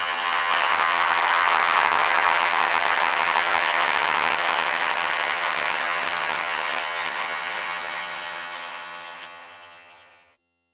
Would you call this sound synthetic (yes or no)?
yes